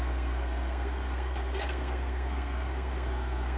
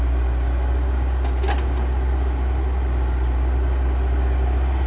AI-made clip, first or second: first